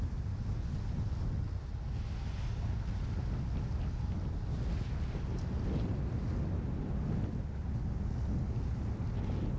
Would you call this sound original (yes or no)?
yes